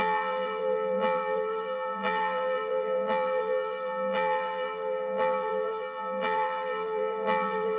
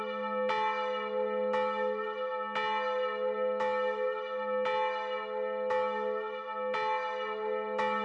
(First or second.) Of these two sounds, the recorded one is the second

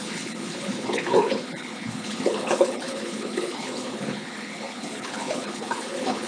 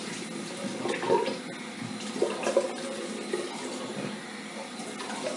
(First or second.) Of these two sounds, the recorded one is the second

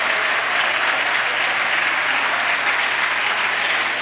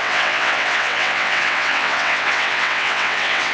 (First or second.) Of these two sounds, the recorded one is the first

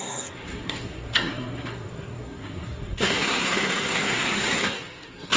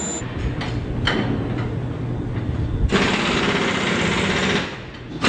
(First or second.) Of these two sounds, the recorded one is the second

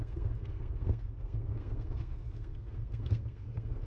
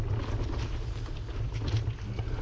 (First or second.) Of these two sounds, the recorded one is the second